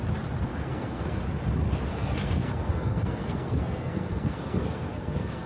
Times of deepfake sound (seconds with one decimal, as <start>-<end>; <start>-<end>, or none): 0.5-1.2; 1.9-5.5